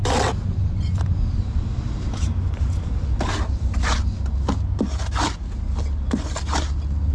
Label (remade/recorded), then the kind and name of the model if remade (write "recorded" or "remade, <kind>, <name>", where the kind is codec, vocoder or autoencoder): recorded